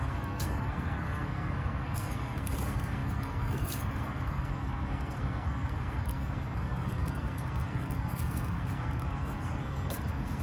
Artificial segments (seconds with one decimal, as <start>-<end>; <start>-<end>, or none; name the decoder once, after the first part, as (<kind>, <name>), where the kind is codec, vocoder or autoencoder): 0.0-10.4 (codec, SNAC)